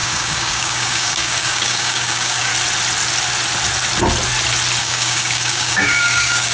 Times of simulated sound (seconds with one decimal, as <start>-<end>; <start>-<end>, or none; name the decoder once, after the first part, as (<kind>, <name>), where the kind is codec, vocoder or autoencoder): 0.0-2.5 (codec, DAC); 4.8-6.5